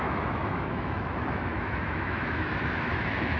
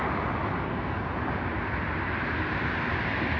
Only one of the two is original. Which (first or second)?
second